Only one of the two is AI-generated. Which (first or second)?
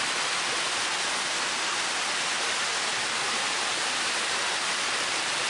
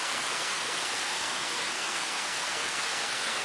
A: second